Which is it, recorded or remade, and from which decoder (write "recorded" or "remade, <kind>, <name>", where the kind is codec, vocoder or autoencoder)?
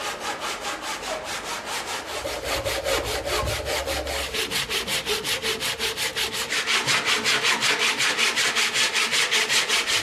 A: recorded